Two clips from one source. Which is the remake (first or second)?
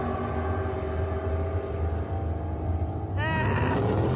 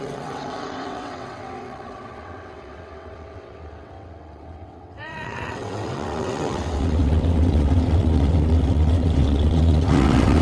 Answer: second